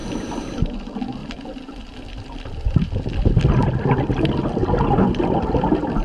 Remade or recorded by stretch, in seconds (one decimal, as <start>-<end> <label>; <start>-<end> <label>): 0.0-6.0 recorded